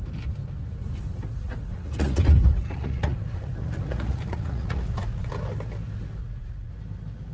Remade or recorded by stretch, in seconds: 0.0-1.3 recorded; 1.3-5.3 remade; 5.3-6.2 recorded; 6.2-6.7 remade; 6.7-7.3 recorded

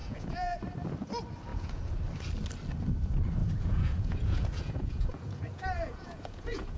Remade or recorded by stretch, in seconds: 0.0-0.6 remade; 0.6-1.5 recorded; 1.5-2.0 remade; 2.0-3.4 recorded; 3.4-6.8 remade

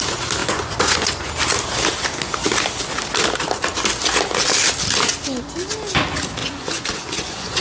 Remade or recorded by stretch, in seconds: 0.0-0.4 recorded; 0.4-1.3 remade; 1.3-6.4 recorded; 6.4-7.6 remade